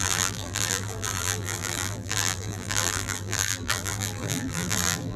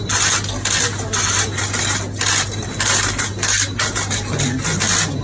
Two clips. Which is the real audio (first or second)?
second